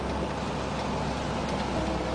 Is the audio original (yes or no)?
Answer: yes